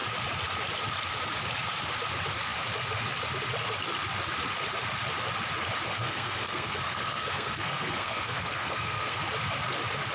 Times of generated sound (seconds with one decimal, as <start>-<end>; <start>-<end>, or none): 5.9-9.2